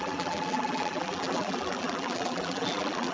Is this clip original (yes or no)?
no